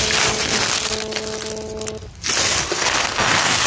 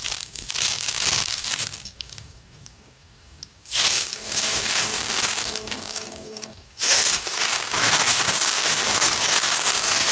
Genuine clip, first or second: first